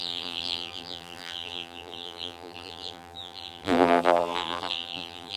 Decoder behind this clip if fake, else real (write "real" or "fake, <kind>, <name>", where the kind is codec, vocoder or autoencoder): fake, vocoder, BigVGAN v2